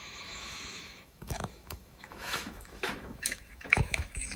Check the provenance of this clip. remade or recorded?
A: remade